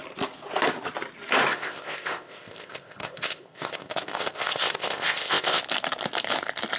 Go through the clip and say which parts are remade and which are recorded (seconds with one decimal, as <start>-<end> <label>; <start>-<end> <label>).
0.0-1.5 recorded; 1.5-5.6 remade; 5.6-6.8 recorded